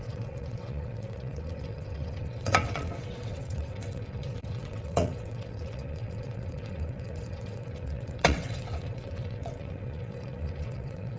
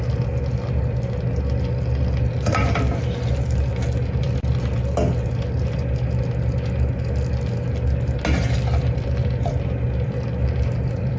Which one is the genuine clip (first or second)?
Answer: second